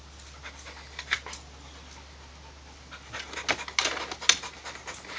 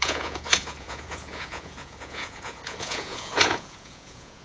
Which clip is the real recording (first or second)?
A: first